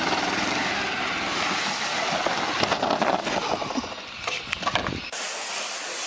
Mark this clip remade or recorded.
recorded